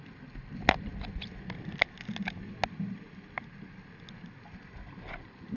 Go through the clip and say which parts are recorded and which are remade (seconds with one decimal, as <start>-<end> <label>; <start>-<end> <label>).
0.0-5.6 recorded